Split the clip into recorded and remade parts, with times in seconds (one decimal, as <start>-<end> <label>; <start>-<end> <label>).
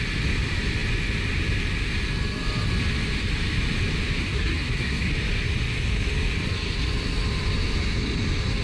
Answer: 0.0-4.2 recorded; 4.2-5.1 remade; 5.1-8.6 recorded